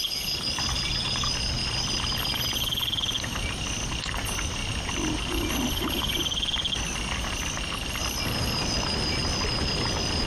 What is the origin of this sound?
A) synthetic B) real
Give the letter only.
B